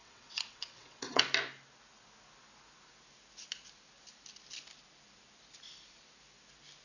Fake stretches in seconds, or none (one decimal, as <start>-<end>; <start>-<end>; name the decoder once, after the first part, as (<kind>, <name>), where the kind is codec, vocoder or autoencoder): 0.0-1.2 (vocoder, WaveNeXt)